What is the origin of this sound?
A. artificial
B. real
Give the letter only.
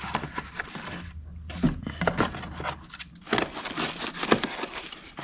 B